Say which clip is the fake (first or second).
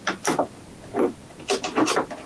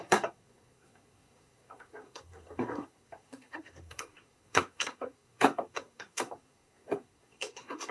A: second